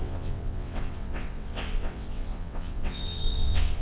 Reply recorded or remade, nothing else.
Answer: remade